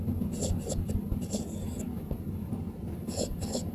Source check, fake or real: real